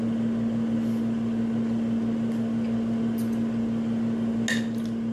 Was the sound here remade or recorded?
recorded